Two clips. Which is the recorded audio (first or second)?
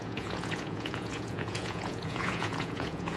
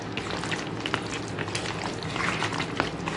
second